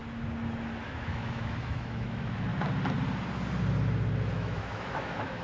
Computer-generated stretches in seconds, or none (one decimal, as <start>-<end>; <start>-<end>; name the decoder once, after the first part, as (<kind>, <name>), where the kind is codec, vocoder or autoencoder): 0.8-2.5 (autoencoder, DAC-VAE); 4.3-5.4